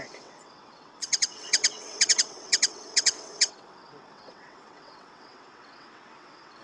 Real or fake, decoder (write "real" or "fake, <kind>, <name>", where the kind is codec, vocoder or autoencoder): fake, vocoder, WaveNeXt